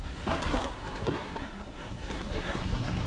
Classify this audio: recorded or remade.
remade